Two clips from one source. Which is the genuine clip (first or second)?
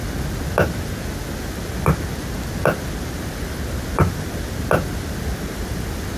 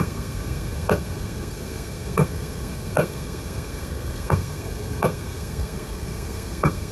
first